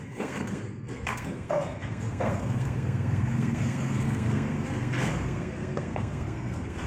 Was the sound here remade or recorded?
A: remade